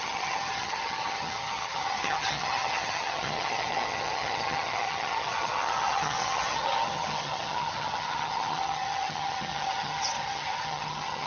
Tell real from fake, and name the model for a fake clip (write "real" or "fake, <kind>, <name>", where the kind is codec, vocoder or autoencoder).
fake, vocoder, HiFi-GAN